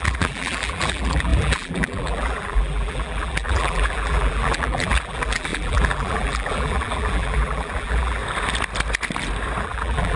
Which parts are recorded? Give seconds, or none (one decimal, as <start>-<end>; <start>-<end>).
8.2-9.6